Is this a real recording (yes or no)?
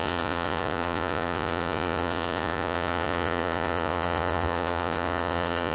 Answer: no